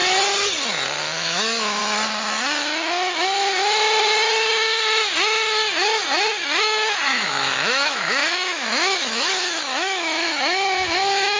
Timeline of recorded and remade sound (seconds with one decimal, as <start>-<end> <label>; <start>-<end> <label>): 0.0-1.0 recorded; 1.0-1.8 remade; 1.8-6.6 recorded; 6.6-11.4 remade